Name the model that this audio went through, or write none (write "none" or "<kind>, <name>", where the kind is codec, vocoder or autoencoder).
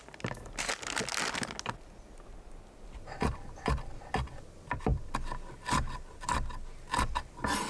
none